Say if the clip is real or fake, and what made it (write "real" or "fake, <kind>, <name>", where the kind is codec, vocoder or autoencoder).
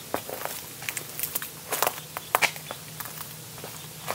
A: real